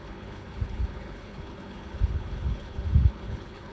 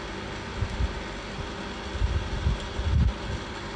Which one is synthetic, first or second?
first